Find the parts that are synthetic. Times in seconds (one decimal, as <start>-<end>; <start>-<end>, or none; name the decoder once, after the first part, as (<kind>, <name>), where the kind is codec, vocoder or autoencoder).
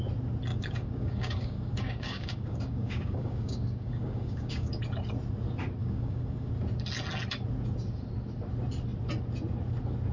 0.5-4.8 (codec, DAC); 5.8-6.5